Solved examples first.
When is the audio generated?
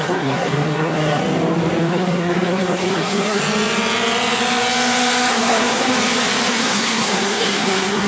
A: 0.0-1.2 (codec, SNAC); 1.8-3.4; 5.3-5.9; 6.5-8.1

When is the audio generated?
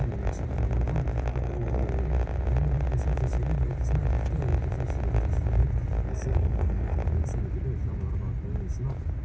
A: 1.3-1.9 (codec, SNAC); 6.1-7.0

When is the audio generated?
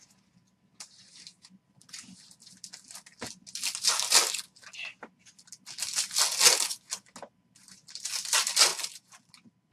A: 8.7-9.7 (vocoder, BigVGAN v2)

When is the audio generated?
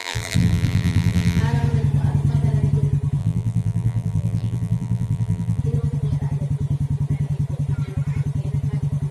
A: 0.0-1.4 (vocoder, BigVGAN v2); 3.2-5.6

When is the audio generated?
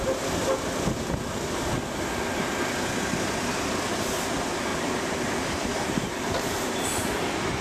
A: 4.7-7.1 (vocoder, BigVGAN v2)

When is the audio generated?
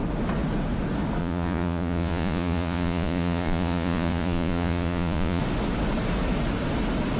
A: 1.2-5.4 (vocoder, Vocos)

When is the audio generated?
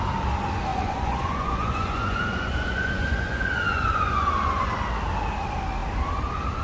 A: 0.7-4.7 (vocoder, Vocos)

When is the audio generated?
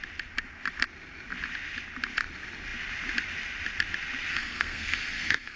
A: 4.3-5.6 (codec, SNAC)